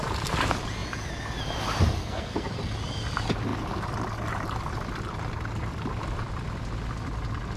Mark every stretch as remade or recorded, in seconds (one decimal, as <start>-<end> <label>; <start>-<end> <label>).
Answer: 0.0-2.0 recorded; 2.0-2.6 remade; 2.6-7.6 recorded